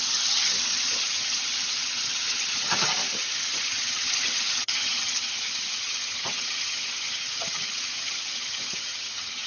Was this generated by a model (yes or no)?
yes